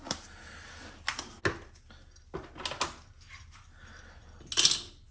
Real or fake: real